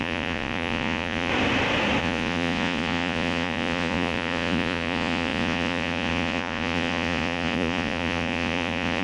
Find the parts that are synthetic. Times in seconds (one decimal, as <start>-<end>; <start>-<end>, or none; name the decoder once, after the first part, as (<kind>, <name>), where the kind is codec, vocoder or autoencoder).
0.0-1.3 (vocoder, Vocos); 2.0-9.0

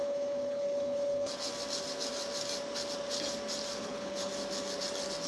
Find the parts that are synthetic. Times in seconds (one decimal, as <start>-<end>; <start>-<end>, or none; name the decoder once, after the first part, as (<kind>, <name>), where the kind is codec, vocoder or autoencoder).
0.0-1.5 (codec, HILCodec); 3.8-4.3

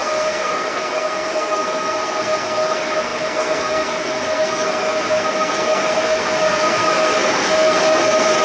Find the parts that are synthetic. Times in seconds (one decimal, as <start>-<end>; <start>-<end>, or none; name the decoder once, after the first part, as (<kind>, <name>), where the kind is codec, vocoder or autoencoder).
0.0-8.4 (codec, SNAC)

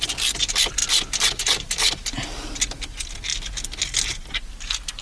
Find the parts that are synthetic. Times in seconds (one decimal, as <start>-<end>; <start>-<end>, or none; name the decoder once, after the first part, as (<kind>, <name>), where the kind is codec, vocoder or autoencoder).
none

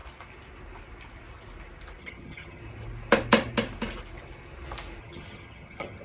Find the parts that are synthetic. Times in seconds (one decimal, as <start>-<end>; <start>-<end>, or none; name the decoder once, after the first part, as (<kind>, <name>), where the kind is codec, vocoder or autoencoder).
2.0-2.6 (vocoder, HiFi-GAN); 5.0-6.0

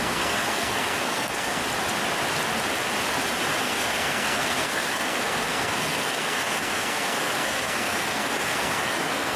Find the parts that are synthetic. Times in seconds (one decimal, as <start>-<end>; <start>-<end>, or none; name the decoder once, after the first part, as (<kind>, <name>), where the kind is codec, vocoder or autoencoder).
0.0-1.6 (codec, SNAC); 3.6-9.4

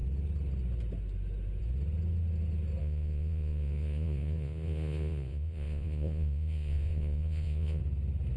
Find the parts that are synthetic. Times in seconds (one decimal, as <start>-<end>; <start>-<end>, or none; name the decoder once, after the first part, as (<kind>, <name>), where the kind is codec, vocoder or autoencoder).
2.8-7.8 (vocoder, Vocos)